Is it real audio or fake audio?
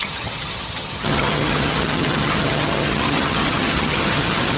fake